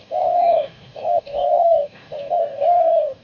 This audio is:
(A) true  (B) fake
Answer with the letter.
B